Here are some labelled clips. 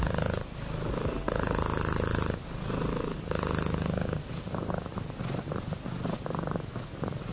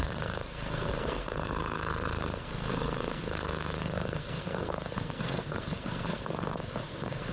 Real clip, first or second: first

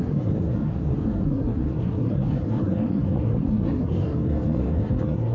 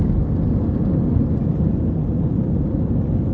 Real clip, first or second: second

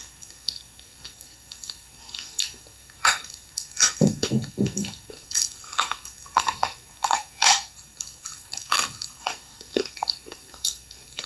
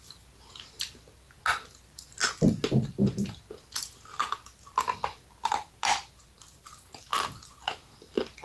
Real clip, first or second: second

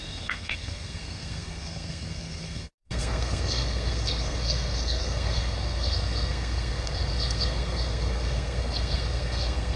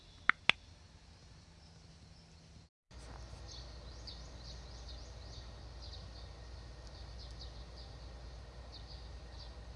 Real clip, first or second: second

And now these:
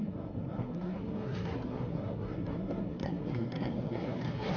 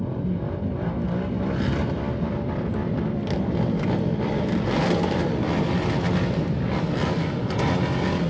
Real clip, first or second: second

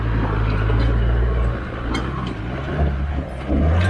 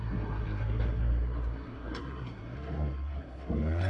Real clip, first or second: first